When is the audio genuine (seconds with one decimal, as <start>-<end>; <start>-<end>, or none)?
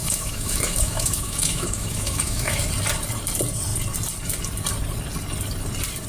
2.7-6.1